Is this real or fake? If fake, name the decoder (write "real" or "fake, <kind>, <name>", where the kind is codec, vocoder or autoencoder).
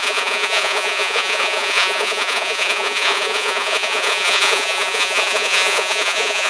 fake, vocoder, Vocos